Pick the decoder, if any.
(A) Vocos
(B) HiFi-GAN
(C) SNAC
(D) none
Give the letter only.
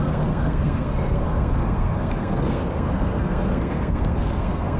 C